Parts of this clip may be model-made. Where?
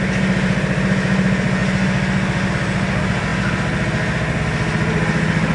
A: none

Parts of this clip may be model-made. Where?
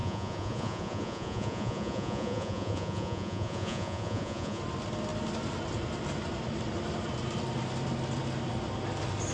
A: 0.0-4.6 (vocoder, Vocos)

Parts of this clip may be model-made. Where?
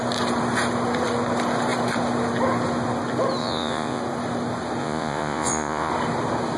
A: 3.4-4.0 (vocoder, Vocos); 4.8-5.9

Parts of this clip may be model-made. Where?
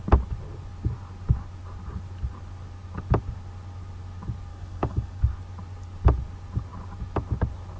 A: 4.5-5.2 (codec, DAC)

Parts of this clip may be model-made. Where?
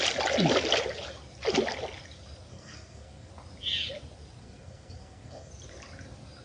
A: 2.5-3.3 (codec, SNAC); 4.4-5.5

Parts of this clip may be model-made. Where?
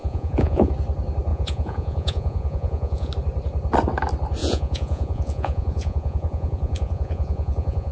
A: 0.0-0.7 (vocoder, Vocos); 1.3-3.1; 4.4-7.9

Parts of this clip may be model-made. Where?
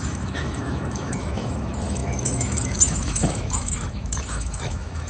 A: 0.0-5.1 (autoencoder, DAC-VAE)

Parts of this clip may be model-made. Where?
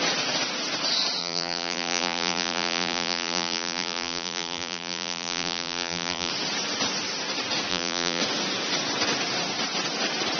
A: 1.2-6.3 (vocoder, BigVGAN v2); 7.7-8.2